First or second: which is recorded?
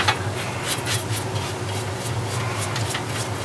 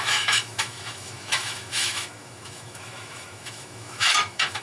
first